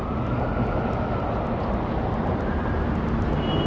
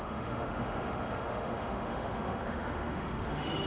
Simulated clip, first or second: second